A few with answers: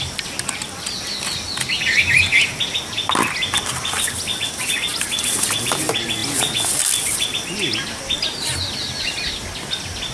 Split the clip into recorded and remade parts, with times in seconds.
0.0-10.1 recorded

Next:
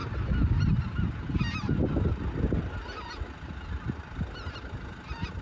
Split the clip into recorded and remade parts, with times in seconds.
0.0-5.4 recorded